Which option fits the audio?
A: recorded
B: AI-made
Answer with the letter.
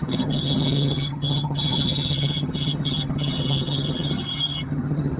B